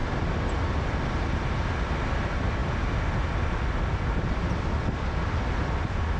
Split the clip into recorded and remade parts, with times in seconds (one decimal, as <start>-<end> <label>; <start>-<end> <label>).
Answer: 0.0-6.2 recorded